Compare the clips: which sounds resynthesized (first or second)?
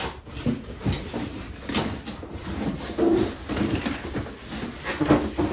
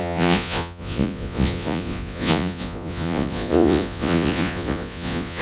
second